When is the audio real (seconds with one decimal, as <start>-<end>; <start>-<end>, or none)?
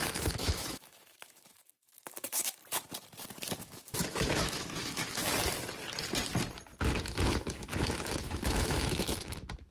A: 2.6-3.6; 5.2-7.0